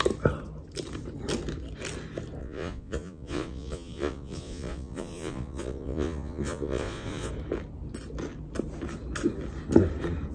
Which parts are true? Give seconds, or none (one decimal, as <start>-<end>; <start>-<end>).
0.0-2.4; 7.3-10.3